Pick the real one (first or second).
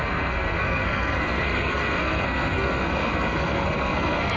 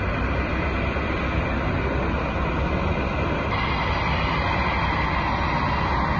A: second